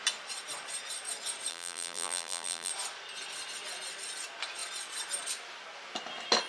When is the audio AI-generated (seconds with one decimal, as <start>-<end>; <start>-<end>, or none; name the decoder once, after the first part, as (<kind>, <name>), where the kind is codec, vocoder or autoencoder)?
1.5-2.7 (vocoder, BigVGAN v2)